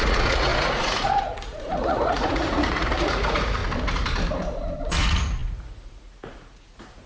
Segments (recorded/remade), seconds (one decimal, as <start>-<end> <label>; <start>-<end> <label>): 0.0-3.6 remade; 3.6-4.9 recorded; 4.9-7.1 remade